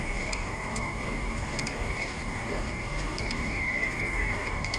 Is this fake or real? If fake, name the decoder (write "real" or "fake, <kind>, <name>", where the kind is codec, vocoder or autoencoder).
fake, codec, DAC